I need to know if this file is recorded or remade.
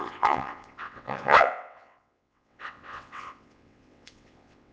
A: remade